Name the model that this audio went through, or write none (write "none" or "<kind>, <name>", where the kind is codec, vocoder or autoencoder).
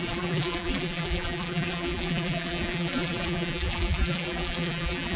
vocoder, BigVGAN v2